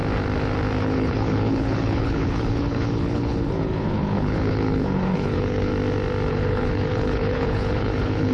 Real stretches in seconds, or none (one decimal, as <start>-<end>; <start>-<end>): 0.0-0.8; 5.7-6.3